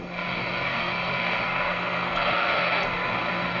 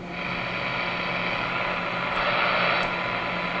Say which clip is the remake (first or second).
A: first